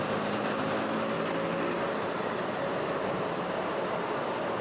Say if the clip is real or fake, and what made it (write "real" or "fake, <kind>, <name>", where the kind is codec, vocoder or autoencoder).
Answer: real